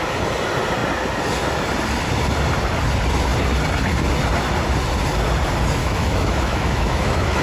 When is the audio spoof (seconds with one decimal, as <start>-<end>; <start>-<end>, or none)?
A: 5.8-7.4